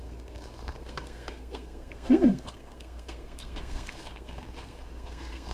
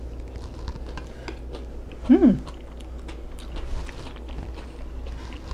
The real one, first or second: second